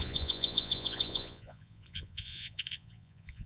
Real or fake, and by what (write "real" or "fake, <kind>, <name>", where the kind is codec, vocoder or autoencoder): fake, vocoder, Vocos